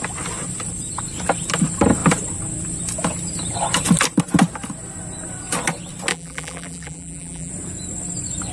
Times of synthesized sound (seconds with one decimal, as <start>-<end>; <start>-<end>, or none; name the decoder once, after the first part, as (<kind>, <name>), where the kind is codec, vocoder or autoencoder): 6.1-7.5 (vocoder, BigVGAN v2)